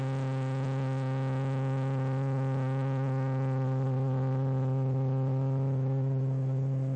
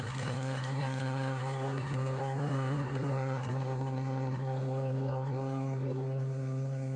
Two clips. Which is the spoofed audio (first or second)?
second